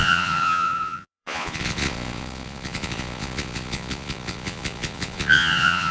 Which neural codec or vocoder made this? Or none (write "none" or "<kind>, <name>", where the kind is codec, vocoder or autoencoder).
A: vocoder, Vocos